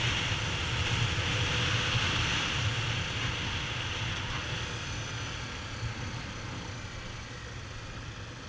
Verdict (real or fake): real